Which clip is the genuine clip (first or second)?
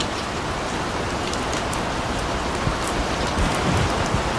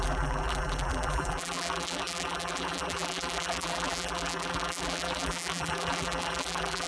first